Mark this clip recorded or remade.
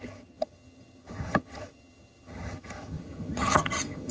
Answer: remade